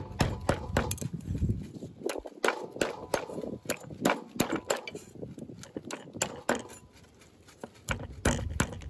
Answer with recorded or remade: recorded